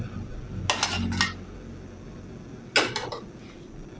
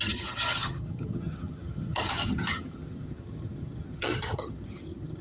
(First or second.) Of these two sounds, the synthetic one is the second